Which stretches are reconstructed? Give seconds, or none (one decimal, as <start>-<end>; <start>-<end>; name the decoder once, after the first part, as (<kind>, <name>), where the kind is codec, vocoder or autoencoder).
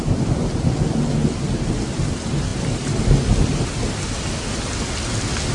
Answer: none